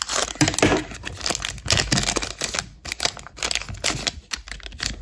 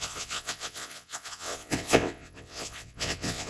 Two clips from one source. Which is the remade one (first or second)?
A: second